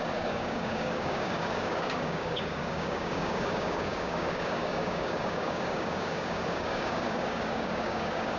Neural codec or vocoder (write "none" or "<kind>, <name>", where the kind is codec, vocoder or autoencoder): codec, DAC